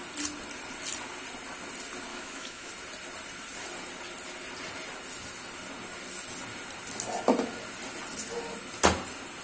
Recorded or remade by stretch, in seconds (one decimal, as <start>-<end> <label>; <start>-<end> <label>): 0.0-2.1 recorded; 2.1-2.7 remade; 2.7-9.4 recorded